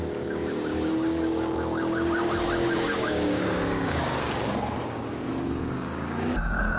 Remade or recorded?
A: remade